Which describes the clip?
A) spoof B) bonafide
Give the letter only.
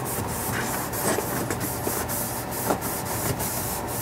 B